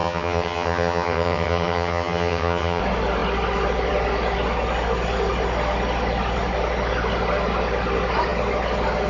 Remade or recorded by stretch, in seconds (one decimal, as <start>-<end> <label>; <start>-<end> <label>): 0.0-2.8 remade; 2.8-9.1 recorded